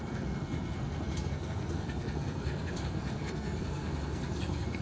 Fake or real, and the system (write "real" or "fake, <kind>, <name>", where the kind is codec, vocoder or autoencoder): fake, codec, SNAC